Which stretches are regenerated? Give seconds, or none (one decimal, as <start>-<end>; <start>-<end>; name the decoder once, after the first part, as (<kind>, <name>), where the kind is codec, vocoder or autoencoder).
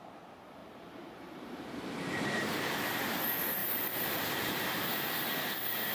0.6-2.7 (vocoder, BigVGAN v2)